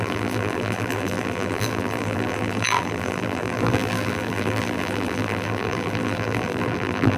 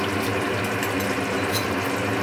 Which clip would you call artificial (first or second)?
first